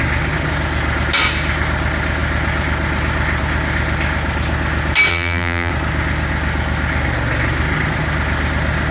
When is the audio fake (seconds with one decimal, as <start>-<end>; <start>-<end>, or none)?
5.1-5.7